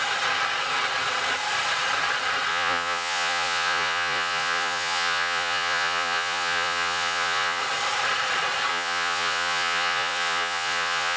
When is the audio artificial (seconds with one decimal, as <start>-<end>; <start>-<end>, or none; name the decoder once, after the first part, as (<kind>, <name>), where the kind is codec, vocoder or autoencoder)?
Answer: 2.5-7.6 (vocoder, Vocos); 8.7-11.2